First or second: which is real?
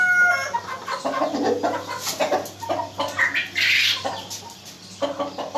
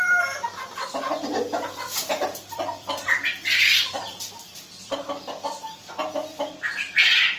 first